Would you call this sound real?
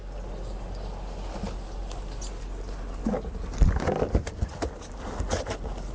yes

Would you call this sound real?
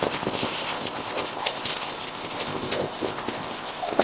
no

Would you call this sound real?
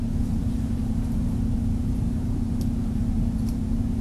no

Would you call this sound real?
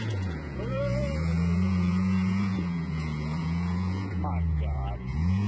no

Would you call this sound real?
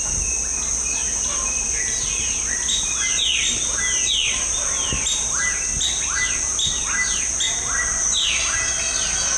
yes